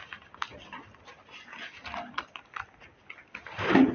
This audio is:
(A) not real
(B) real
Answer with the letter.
B